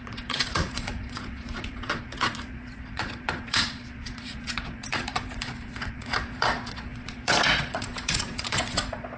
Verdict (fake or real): fake